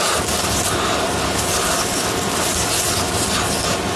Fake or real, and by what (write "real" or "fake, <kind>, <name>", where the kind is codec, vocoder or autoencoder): real